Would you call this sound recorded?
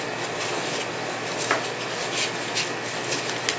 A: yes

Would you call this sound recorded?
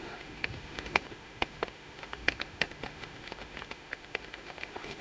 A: no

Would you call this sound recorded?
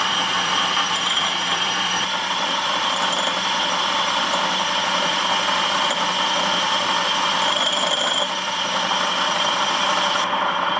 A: no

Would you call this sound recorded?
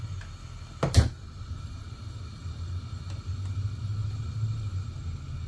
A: yes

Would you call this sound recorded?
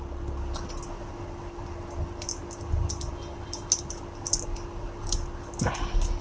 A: yes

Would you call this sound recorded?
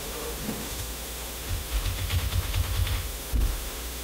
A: no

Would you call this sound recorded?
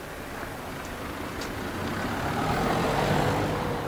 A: yes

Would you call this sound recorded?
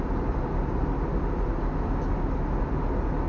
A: yes